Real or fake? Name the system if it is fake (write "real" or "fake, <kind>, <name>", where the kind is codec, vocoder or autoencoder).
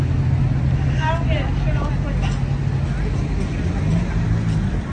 real